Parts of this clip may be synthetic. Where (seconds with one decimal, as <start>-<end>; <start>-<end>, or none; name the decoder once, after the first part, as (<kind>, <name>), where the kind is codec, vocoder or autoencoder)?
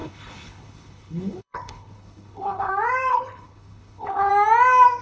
0.0-2.7 (codec, HILCodec); 3.1-4.3